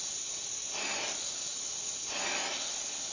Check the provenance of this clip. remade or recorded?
recorded